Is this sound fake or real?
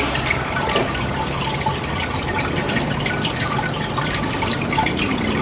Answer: fake